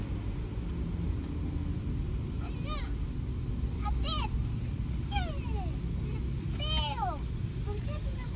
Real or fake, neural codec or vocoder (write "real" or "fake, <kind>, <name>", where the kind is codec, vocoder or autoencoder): real